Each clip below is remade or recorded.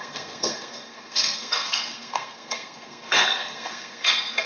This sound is remade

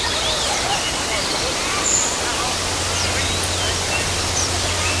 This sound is recorded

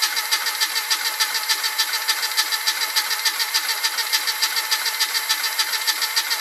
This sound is remade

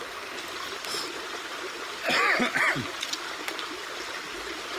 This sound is recorded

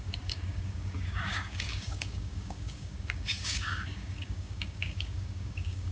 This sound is remade